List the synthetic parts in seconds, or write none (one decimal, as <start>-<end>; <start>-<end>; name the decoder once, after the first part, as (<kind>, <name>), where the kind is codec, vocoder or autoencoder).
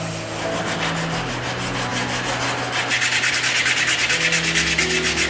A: none